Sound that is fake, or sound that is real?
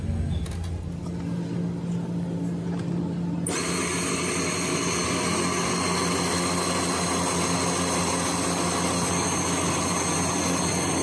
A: real